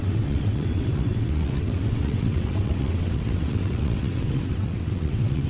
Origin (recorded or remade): remade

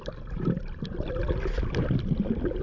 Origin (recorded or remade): recorded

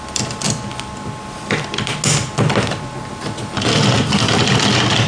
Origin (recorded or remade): recorded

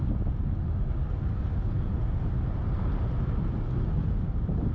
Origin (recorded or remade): recorded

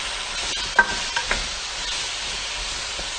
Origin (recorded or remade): recorded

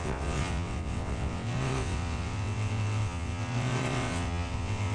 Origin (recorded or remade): remade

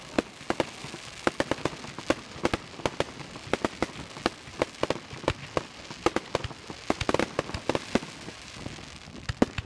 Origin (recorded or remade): recorded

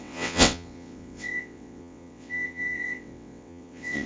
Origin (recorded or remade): remade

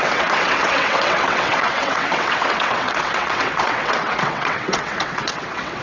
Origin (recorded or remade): remade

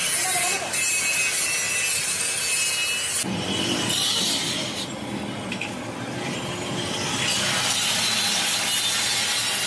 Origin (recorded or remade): recorded